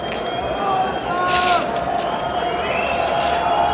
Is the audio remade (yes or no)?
no